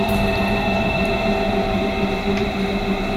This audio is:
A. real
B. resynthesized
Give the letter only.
B